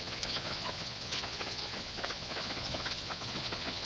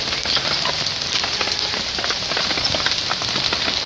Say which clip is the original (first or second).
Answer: second